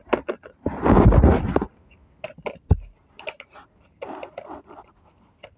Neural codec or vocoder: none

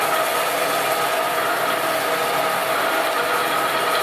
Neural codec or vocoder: none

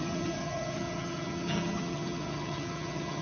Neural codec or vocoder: vocoder, HiFi-GAN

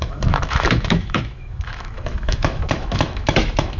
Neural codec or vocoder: autoencoder, DAC-VAE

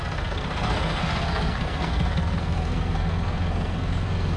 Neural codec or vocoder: codec, SNAC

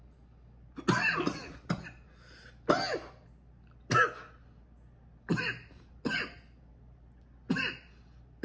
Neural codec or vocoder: none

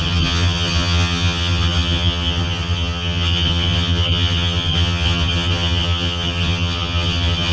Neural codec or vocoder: vocoder, HiFi-GAN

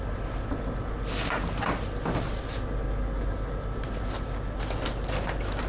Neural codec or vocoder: none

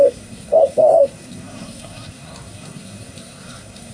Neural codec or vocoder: codec, SNAC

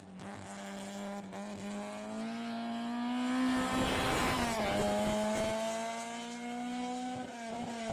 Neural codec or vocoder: none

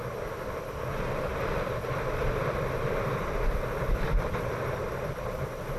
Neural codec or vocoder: vocoder, BigVGAN v2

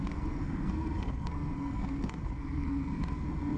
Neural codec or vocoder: codec, SNAC